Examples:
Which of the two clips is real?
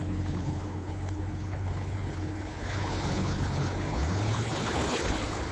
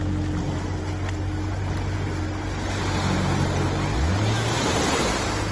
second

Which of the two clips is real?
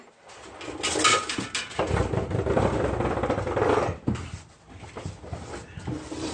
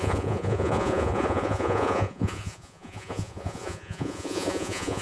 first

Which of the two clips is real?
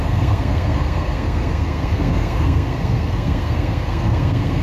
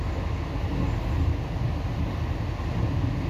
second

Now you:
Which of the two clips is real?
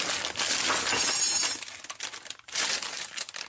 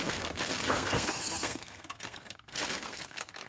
first